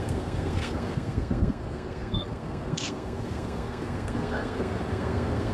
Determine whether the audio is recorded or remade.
remade